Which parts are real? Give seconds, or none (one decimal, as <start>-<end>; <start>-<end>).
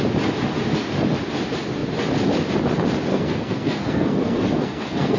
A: 0.0-3.1